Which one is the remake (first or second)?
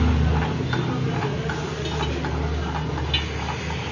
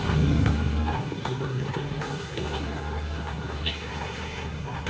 second